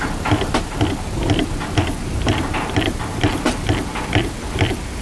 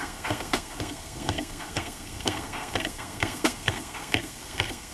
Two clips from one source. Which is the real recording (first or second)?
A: first